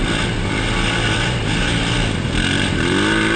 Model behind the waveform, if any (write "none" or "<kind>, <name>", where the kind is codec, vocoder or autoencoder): none